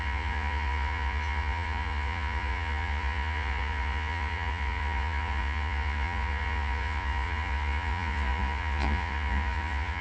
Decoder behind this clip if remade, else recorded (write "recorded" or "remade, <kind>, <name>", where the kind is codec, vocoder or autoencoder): remade, vocoder, Vocos